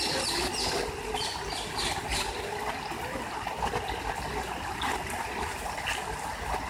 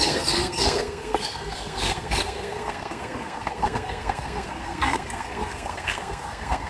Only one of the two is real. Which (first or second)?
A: first